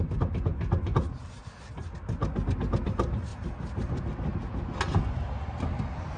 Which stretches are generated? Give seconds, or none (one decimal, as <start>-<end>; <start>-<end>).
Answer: none